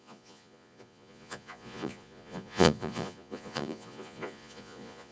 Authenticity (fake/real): fake